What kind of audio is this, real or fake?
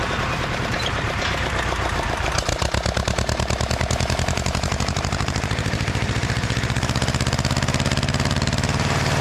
fake